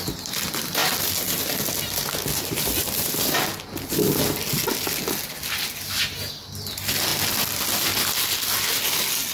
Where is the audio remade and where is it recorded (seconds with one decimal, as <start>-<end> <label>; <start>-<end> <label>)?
0.0-9.3 recorded